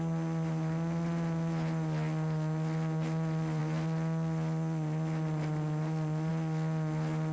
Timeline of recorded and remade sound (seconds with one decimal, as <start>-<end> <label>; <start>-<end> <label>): 0.0-7.3 recorded

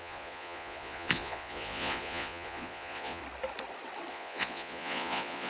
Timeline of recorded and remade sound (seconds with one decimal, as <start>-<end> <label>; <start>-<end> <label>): 0.0-3.2 remade; 3.2-4.1 recorded; 4.1-5.5 remade

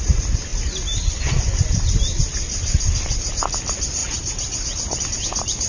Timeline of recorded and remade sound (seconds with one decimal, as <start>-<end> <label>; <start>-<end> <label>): 0.0-5.7 recorded

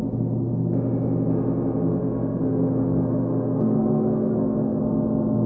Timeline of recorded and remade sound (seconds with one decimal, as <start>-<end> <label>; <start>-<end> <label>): 0.0-2.0 recorded; 2.0-4.8 remade; 4.8-5.5 recorded

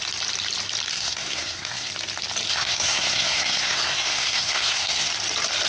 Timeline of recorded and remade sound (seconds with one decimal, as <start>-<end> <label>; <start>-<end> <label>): 0.0-0.9 recorded; 0.9-1.9 remade; 1.9-2.5 recorded; 2.5-5.1 remade; 5.1-5.7 recorded